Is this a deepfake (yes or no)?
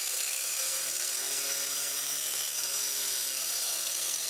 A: yes